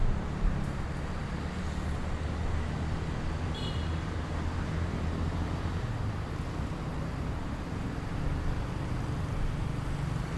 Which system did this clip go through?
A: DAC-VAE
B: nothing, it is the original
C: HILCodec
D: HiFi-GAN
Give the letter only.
B